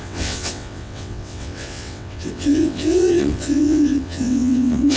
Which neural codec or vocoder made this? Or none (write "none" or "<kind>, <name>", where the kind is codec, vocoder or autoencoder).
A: vocoder, WaveNeXt